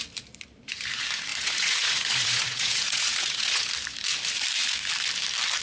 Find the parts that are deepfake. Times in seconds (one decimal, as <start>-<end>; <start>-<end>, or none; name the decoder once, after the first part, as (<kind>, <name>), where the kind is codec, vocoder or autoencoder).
1.3-3.7 (vocoder, Vocos)